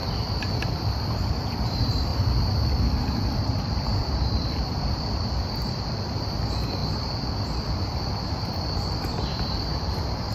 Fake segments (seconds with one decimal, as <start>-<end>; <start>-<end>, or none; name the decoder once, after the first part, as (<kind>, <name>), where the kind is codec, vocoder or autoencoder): 0.5-2.1 (vocoder, BigVGAN v2); 3.0-10.3